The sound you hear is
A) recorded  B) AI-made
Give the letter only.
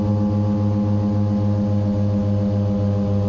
A